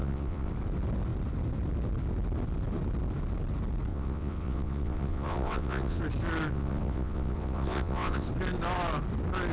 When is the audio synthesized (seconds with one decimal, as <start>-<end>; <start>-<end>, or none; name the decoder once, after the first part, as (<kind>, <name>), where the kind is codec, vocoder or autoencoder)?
0.0-0.5 (vocoder, WaveNeXt); 3.9-6.0; 6.5-8.3